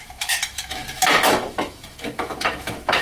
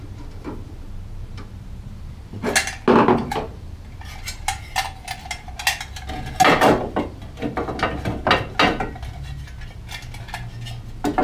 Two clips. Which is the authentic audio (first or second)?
second